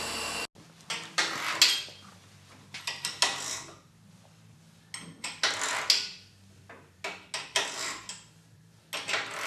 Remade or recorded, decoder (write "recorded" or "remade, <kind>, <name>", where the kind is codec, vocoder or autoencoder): recorded